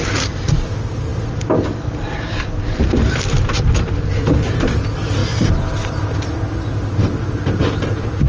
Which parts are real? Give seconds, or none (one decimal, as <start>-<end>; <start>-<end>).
none